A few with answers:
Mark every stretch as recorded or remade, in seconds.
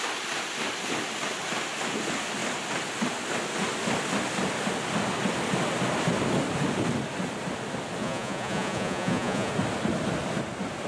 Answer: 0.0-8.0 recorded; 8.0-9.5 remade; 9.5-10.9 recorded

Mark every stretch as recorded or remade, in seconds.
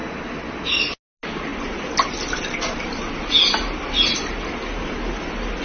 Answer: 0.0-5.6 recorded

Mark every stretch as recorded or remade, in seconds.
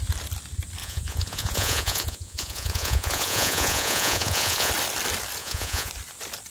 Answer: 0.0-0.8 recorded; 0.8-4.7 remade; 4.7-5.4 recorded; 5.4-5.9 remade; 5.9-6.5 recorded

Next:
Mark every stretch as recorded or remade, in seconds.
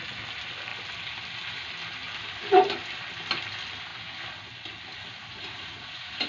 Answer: 0.0-5.3 recorded; 5.3-6.3 remade